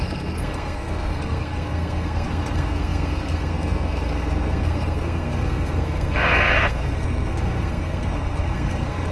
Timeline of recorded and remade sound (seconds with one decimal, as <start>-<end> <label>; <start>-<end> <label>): 0.0-9.1 remade